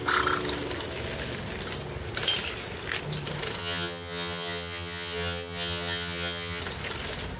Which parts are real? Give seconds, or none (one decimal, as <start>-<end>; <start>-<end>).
0.0-3.6; 6.6-7.4

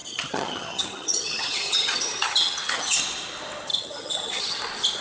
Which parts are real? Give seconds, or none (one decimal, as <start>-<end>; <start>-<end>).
3.0-3.7; 4.6-5.0

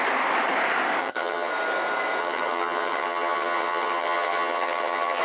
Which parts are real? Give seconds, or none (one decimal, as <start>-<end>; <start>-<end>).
0.0-1.0; 1.5-2.2

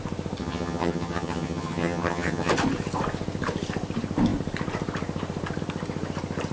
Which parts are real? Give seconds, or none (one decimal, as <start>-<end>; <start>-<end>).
0.0-0.4; 2.5-6.5

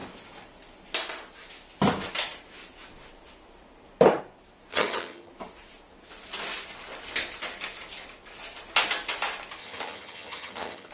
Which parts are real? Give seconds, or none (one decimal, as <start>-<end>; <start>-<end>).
0.0-4.7; 5.3-9.6

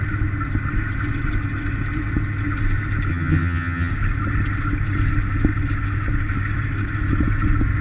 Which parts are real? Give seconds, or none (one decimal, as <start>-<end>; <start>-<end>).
0.0-3.1; 3.9-7.8

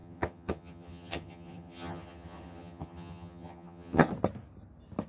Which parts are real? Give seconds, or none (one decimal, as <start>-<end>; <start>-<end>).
4.1-5.1